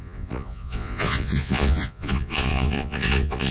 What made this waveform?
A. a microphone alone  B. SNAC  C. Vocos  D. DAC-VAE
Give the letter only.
C